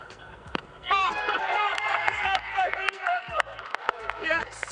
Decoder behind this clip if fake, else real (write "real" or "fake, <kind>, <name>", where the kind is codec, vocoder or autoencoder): fake, codec, SNAC